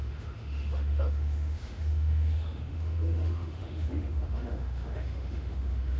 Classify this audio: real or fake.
fake